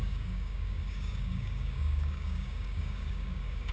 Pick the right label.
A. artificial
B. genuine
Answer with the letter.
A